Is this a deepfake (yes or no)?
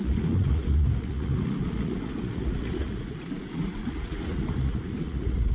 yes